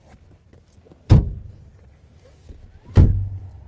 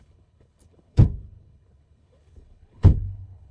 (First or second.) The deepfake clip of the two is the second